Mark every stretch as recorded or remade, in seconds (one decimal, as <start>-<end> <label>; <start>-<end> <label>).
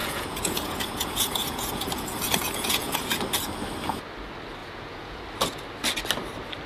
0.0-3.2 remade; 3.2-4.6 recorded; 4.6-5.2 remade; 5.2-6.7 recorded